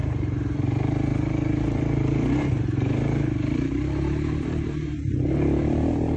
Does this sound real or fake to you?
fake